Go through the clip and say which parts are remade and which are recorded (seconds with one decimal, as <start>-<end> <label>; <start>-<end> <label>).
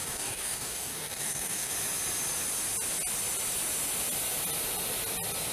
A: 0.0-1.7 remade; 1.7-5.5 recorded